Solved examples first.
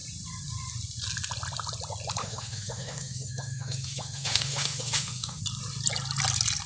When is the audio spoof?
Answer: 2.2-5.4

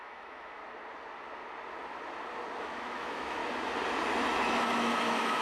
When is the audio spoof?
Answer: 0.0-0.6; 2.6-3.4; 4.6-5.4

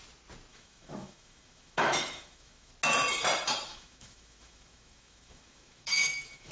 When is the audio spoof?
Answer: 0.5-2.7; 3.7-6.5

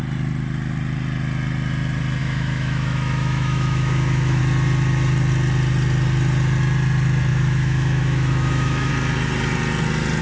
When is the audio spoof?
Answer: 2.2-4.4; 7.3-8.9

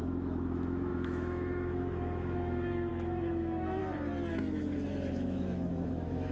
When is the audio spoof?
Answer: 0.0-3.8; 4.3-6.3

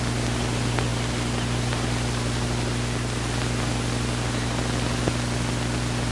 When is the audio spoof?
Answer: none

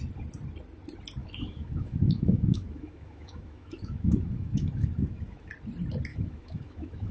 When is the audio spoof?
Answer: 1.2-5.5; 6.1-7.1